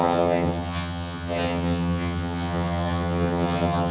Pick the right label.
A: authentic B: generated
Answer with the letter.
B